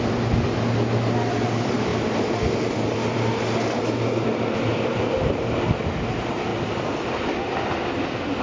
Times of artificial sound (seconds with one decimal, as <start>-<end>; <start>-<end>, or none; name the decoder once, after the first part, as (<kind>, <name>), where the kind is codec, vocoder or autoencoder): none